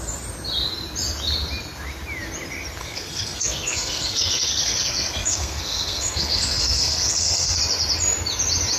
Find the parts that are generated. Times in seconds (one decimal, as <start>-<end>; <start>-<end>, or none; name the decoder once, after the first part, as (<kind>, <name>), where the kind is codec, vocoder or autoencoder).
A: 2.8-7.6 (codec, SNAC)